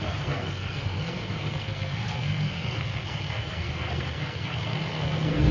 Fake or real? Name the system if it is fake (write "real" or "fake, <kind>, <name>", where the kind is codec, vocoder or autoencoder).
fake, codec, SNAC